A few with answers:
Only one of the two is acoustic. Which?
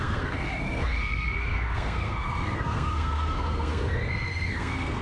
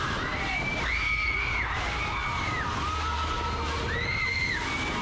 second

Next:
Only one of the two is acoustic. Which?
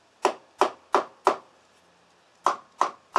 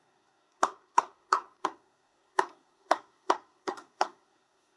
first